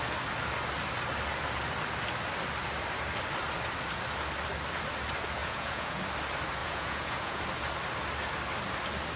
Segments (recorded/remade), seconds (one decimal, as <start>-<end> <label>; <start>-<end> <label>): 0.0-5.4 recorded; 5.4-6.0 remade; 6.0-6.6 recorded; 6.6-7.4 remade; 7.4-9.2 recorded